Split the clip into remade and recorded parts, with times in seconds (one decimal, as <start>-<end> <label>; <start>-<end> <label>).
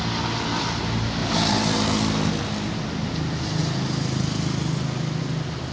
0.0-1.2 recorded; 1.2-2.3 remade; 2.3-5.7 recorded